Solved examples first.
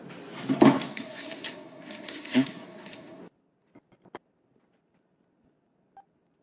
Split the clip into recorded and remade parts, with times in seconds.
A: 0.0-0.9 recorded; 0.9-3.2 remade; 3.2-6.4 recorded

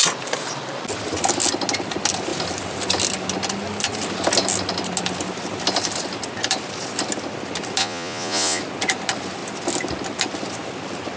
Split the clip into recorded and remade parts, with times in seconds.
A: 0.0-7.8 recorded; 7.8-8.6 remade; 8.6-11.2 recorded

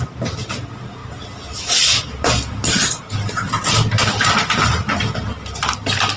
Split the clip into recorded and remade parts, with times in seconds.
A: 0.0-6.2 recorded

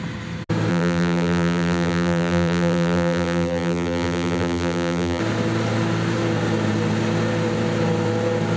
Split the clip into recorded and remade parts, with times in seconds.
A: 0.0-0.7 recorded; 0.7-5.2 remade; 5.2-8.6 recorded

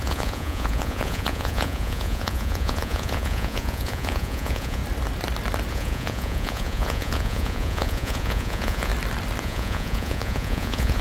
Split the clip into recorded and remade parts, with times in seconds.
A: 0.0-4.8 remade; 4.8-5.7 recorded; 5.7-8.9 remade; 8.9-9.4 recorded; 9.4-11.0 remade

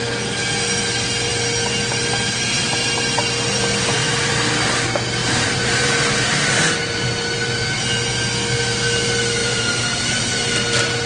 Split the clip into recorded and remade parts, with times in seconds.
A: 0.0-4.0 recorded; 4.0-4.7 remade; 4.7-5.2 recorded; 5.2-6.6 remade; 6.6-9.4 recorded; 9.4-10.0 remade; 10.0-11.1 recorded

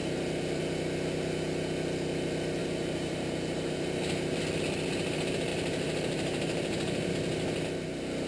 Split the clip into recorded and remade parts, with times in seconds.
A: 0.0-0.6 remade; 0.6-2.6 recorded; 2.6-4.4 remade; 4.4-5.5 recorded; 5.5-7.1 remade; 7.1-8.3 recorded